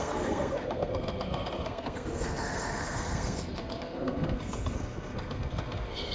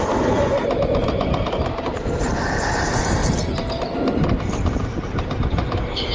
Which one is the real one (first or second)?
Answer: second